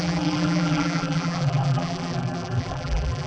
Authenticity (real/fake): fake